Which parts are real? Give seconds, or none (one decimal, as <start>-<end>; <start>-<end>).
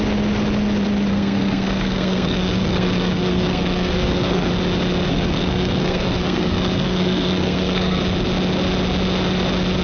0.0-1.1; 4.5-5.1; 8.0-9.8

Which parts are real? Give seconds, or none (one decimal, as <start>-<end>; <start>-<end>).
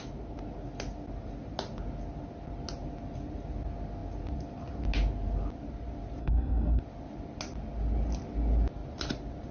0.0-6.2; 6.8-9.5